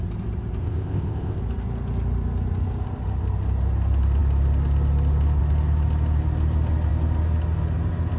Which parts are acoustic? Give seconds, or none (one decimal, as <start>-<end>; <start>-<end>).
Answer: 0.0-0.6; 1.4-8.2